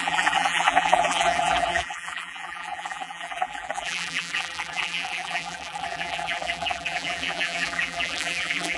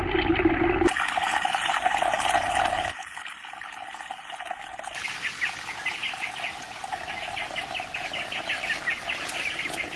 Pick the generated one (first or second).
first